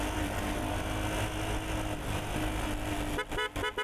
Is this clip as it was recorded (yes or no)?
yes